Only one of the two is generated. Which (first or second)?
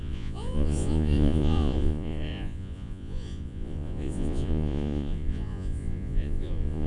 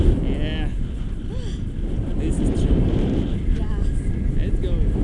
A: first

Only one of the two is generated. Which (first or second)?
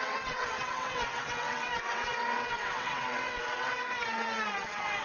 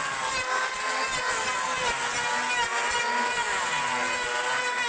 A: first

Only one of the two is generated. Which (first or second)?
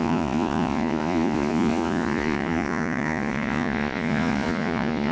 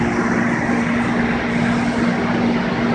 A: first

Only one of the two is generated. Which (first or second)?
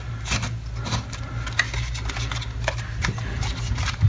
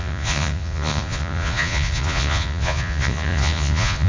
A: second